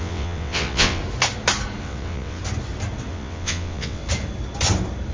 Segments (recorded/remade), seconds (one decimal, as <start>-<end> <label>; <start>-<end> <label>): 0.0-1.0 remade; 1.0-1.8 recorded; 1.8-2.4 remade; 2.4-3.1 recorded; 3.1-4.0 remade; 4.0-5.1 recorded